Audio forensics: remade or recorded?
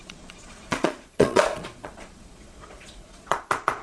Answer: remade